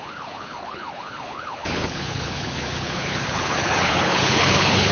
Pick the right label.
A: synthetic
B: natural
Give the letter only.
A